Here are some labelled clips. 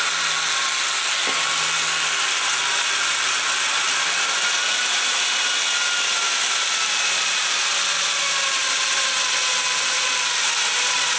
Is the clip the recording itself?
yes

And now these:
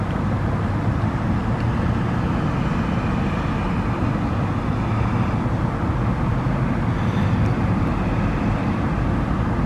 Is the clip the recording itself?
yes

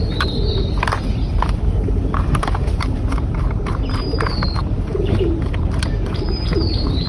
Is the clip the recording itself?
no